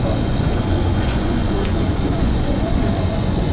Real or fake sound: fake